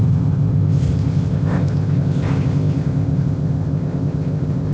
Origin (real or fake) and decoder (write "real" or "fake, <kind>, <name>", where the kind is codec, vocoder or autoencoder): fake, codec, ZipCodec